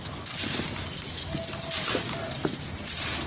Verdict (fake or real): real